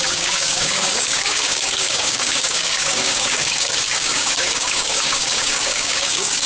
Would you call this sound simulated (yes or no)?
yes